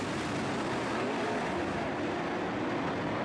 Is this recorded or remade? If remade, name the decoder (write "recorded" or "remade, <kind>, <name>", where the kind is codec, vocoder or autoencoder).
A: recorded